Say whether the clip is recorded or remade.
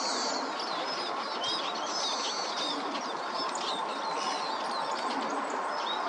recorded